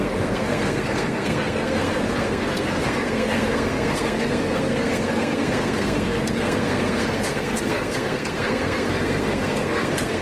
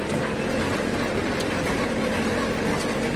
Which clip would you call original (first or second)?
second